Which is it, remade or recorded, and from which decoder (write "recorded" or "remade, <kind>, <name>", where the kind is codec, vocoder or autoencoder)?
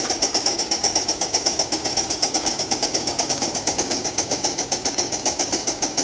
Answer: remade, codec, DAC